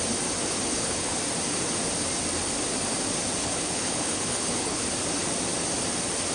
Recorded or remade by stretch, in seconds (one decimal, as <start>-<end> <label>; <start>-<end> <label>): 0.0-0.7 recorded; 0.7-1.2 remade; 1.2-3.4 recorded; 3.4-4.8 remade; 4.8-6.3 recorded